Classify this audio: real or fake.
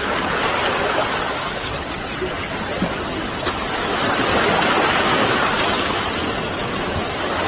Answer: real